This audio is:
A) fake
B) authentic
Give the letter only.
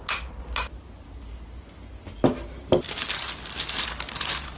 B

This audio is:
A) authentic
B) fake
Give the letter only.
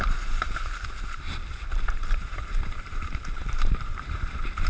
B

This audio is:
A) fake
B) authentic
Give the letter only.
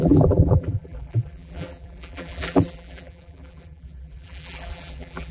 A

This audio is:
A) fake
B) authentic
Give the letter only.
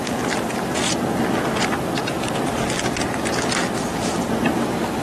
B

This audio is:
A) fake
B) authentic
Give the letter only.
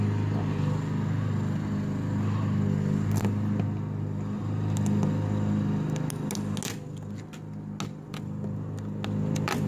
B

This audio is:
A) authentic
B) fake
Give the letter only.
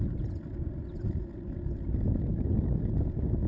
A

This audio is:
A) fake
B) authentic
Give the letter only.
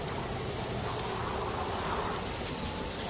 B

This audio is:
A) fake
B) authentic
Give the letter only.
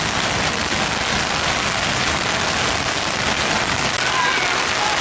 B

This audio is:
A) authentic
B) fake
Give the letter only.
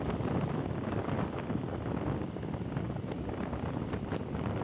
B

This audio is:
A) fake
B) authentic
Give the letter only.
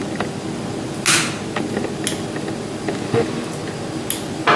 B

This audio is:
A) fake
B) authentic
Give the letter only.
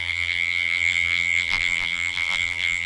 A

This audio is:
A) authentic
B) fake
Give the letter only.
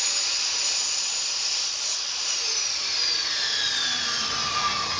B